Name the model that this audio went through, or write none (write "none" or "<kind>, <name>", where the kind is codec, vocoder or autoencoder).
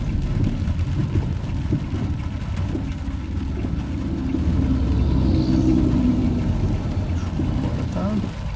none